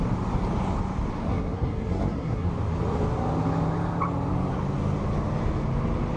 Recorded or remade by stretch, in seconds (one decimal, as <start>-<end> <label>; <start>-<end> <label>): 0.0-1.2 recorded; 1.2-2.5 remade; 2.5-6.2 recorded

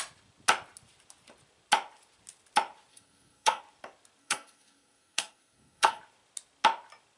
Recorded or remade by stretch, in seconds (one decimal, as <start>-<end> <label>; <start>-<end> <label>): 0.0-2.9 recorded; 2.9-3.6 remade; 3.6-4.2 recorded; 4.2-6.0 remade; 6.0-7.2 recorded

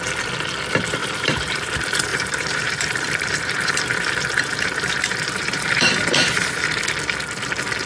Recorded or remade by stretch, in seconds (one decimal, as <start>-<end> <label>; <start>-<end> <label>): 0.0-1.0 recorded; 1.0-1.7 remade; 1.7-2.1 recorded; 2.1-6.8 remade; 6.8-7.9 recorded

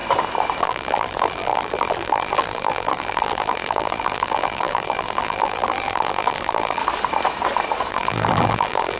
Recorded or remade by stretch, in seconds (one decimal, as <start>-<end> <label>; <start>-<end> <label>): 0.0-0.6 recorded; 0.6-6.8 remade; 6.8-7.9 recorded; 7.9-9.0 remade

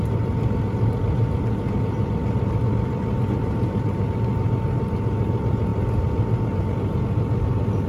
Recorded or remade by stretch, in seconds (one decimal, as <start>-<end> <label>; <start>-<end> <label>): 0.0-7.9 recorded

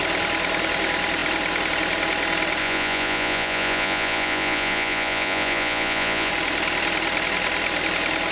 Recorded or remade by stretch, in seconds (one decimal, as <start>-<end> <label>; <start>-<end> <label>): 0.0-2.6 recorded; 2.6-6.3 remade; 6.3-8.3 recorded

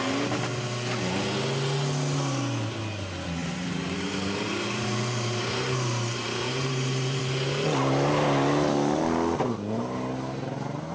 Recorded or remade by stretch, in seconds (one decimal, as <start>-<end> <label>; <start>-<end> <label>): 0.0-3.4 recorded; 3.4-7.2 remade; 7.2-10.9 recorded